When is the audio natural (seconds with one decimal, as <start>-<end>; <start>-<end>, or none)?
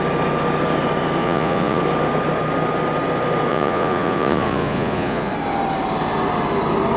0.0-1.2; 1.8-3.5; 5.3-7.0